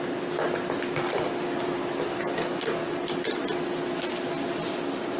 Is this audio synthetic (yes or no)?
no